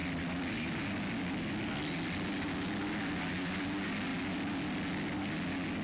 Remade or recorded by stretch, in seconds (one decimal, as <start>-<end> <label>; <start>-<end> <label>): 0.0-5.8 recorded